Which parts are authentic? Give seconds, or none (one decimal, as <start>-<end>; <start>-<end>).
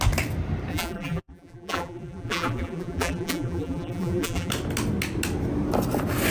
0.0-0.7; 4.5-6.3